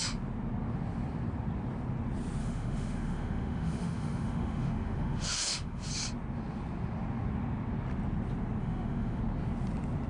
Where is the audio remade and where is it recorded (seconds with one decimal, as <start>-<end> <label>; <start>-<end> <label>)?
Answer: 0.0-2.4 recorded; 2.4-5.9 remade; 5.9-8.6 recorded; 8.6-9.2 remade; 9.2-10.1 recorded